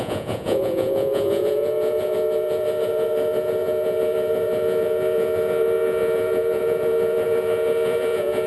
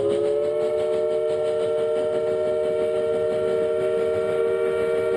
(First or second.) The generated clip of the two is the first